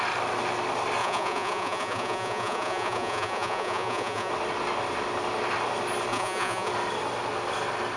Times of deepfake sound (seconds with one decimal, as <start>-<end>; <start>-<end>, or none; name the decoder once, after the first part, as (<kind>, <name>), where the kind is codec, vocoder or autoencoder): 1.0-4.3 (vocoder, Vocos); 6.1-6.7